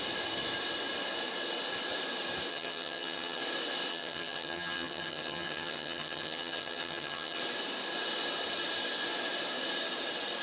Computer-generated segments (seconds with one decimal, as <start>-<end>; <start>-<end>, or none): 2.5-3.4; 3.9-7.4